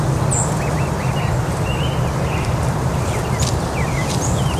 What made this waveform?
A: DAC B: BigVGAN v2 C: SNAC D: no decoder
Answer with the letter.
D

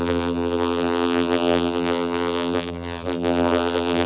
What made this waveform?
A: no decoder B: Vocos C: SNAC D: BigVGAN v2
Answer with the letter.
D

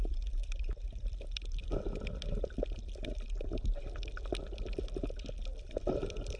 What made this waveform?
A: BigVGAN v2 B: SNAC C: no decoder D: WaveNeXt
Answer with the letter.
C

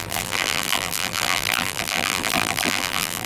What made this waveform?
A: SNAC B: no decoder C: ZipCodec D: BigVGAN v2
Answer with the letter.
D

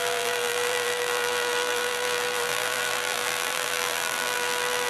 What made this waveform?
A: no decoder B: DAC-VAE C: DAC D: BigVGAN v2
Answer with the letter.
D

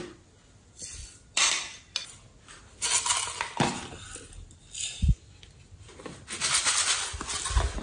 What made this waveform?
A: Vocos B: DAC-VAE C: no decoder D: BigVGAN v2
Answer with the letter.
C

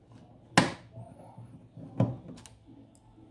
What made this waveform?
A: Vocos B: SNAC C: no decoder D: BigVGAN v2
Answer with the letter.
C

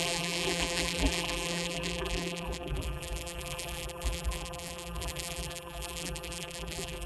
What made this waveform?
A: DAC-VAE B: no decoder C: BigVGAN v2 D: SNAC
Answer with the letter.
C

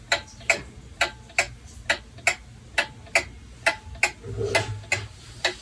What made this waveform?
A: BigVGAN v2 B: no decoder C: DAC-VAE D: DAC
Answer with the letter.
B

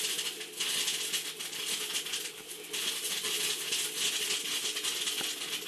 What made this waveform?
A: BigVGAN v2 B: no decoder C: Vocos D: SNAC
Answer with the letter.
B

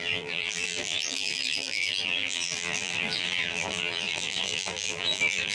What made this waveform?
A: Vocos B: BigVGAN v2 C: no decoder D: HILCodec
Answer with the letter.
B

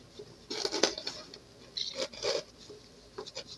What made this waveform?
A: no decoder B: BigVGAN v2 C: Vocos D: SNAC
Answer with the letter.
A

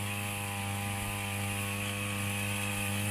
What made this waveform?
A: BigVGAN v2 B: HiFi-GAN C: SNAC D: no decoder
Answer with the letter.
D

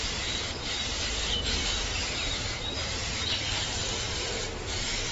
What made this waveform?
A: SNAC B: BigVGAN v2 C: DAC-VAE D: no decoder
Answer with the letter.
B